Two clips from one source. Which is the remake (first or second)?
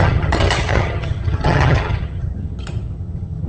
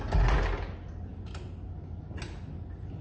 first